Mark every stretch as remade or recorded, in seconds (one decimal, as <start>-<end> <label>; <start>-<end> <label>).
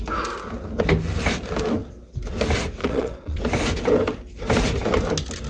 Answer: 0.0-2.8 recorded; 2.8-3.4 remade; 3.4-5.5 recorded